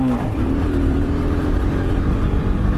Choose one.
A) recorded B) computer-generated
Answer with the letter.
B